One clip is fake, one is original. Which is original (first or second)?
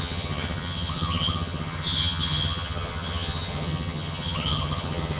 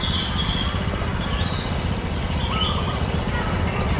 second